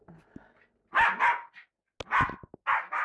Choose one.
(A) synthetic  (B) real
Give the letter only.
B